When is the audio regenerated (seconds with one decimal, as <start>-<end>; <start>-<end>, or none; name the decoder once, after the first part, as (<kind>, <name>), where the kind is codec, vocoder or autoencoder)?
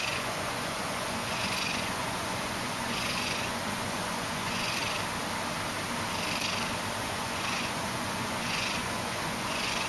0.0-4.8 (vocoder, Vocos); 7.0-9.9